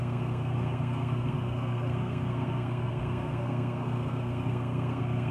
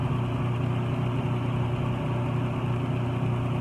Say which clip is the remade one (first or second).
first